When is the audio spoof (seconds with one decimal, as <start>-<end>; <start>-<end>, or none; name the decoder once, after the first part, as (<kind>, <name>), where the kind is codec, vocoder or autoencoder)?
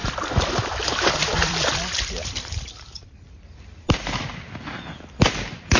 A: 0.0-3.4 (vocoder, BigVGAN v2)